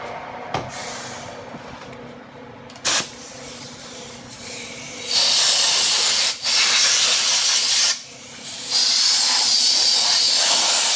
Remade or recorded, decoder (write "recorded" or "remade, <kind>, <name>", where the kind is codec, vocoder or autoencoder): recorded